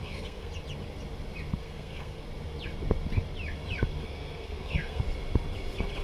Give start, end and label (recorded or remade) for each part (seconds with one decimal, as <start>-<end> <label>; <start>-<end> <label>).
0.0-0.5 remade; 0.5-1.6 recorded; 1.6-2.2 remade; 2.2-4.0 recorded; 4.0-5.0 remade; 5.0-6.0 recorded